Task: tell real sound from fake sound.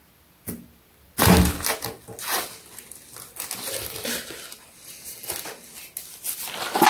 real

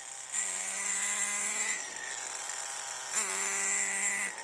real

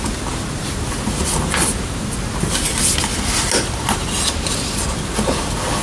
real